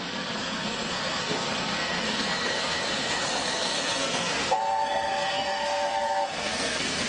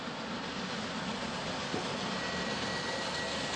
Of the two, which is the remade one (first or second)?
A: first